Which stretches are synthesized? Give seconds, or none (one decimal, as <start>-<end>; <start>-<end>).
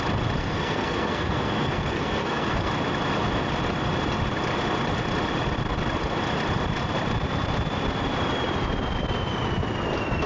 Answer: 0.4-2.7